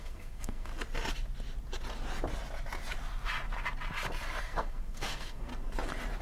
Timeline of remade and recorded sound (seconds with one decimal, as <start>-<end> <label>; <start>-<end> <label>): 0.0-0.7 remade; 0.7-4.4 recorded; 4.4-5.5 remade; 5.5-6.2 recorded